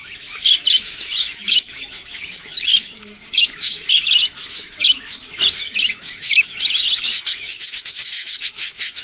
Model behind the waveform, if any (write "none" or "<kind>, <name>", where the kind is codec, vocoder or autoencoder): autoencoder, DAC-VAE